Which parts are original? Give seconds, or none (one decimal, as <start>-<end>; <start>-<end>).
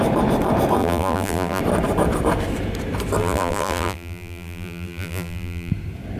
0.0-0.8; 1.6-3.2; 5.7-6.2